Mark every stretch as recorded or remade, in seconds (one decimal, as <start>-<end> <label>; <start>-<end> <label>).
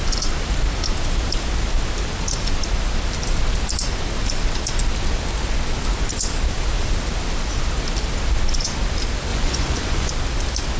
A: 0.0-9.3 recorded; 9.3-10.1 remade; 10.1-10.8 recorded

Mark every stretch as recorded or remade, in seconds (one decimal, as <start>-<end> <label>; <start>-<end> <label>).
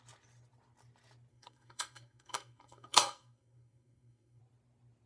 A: 0.0-1.3 recorded; 1.3-4.4 remade; 4.4-5.1 recorded